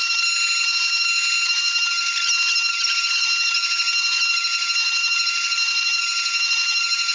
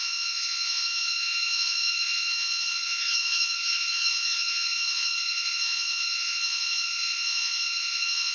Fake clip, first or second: second